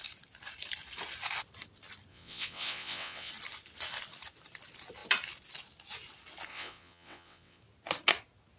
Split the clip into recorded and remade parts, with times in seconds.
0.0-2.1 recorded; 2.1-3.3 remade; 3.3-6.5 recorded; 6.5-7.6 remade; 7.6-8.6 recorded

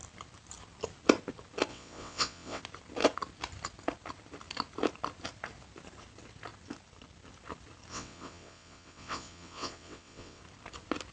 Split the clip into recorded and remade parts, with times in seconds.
0.0-1.7 recorded; 1.7-2.6 remade; 2.6-7.9 recorded; 7.9-10.4 remade; 10.4-11.1 recorded

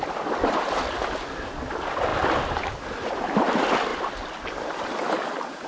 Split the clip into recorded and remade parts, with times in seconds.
0.0-5.7 recorded

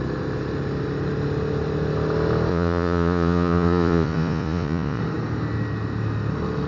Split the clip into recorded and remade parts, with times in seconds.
0.0-2.5 recorded; 2.5-5.0 remade; 5.0-6.7 recorded

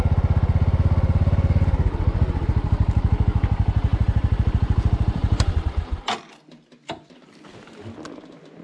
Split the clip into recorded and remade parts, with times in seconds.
0.0-3.9 recorded; 3.9-6.0 remade; 6.0-8.6 recorded

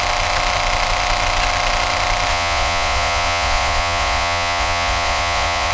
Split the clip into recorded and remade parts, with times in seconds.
0.0-2.3 recorded; 2.3-5.7 remade